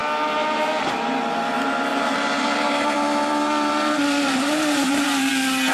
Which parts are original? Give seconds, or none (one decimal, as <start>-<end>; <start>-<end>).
0.0-1.9; 5.3-5.7